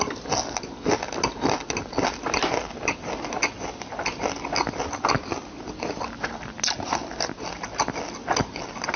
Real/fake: real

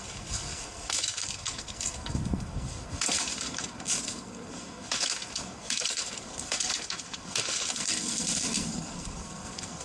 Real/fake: fake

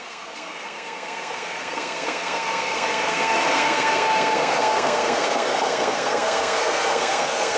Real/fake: fake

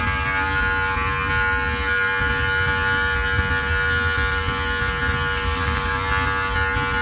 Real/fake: real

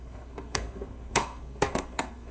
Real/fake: fake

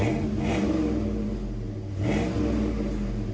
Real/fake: real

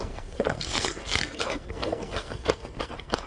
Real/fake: fake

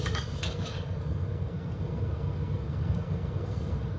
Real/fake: fake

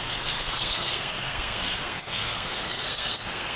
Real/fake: fake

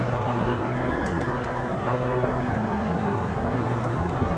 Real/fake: fake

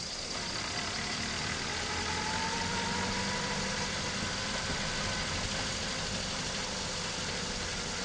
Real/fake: real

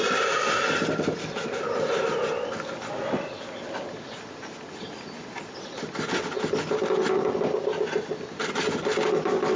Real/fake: real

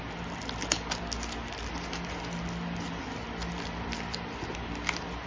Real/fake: real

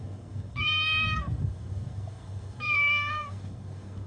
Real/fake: fake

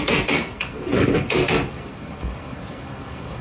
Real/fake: fake